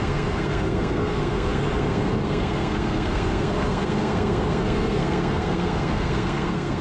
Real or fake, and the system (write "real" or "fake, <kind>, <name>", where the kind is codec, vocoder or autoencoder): fake, codec, SNAC